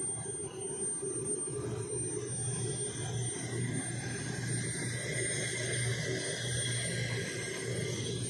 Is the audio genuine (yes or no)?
yes